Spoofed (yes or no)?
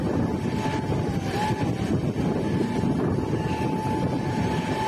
no